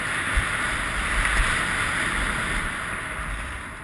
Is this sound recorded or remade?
recorded